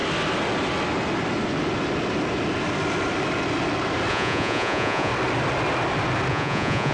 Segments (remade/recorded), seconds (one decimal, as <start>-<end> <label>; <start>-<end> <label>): 0.0-4.1 recorded; 4.1-5.1 remade; 5.1-6.3 recorded; 6.3-6.9 remade